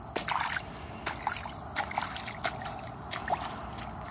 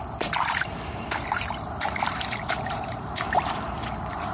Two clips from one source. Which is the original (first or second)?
first